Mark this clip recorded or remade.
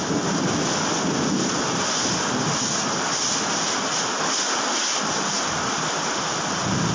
recorded